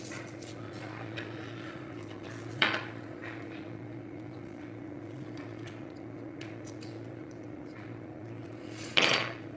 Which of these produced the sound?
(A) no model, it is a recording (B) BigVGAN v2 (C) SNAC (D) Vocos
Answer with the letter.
D